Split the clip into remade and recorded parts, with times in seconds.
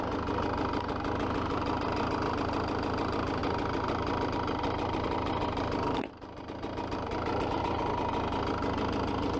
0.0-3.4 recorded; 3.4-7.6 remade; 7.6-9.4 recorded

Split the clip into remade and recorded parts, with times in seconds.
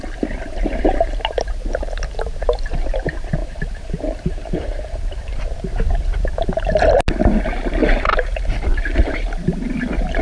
0.0-3.4 recorded; 3.4-5.4 remade; 5.4-7.8 recorded; 7.8-9.2 remade; 9.2-10.2 recorded